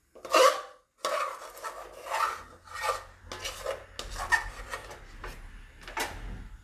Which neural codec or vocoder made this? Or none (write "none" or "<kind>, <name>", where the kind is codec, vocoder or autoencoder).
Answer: none